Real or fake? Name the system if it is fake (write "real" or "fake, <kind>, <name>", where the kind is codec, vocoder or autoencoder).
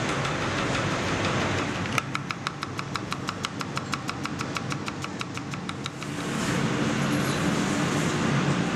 real